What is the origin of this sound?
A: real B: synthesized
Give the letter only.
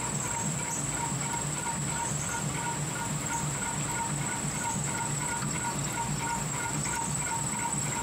B